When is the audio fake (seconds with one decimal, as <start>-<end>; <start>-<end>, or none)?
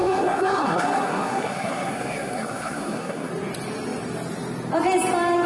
0.0-3.3